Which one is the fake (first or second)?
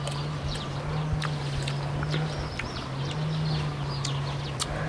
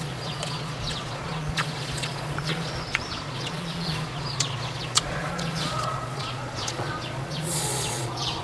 second